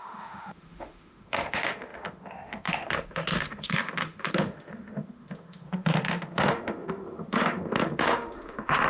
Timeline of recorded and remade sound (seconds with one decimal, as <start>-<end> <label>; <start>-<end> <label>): 0.0-8.9 remade